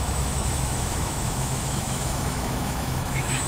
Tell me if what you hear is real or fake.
fake